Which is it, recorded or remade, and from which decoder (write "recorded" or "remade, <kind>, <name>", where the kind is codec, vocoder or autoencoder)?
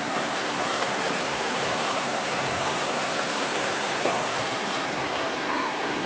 remade, codec, SNAC